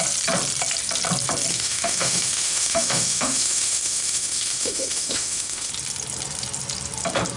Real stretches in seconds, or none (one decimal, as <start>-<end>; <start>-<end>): 0.0-1.5; 5.7-7.4